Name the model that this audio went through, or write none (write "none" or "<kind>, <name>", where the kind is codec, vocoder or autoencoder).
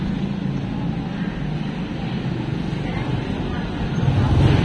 none